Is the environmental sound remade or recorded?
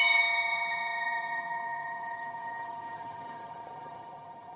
remade